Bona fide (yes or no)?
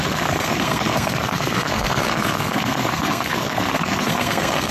no